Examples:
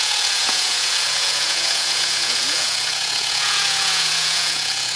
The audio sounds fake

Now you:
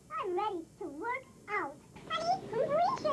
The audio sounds real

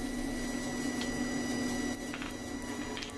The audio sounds real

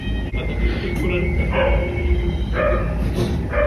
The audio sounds real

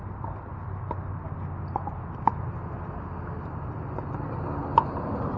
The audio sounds real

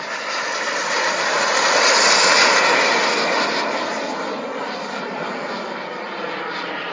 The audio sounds real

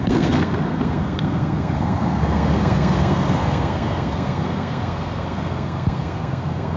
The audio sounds fake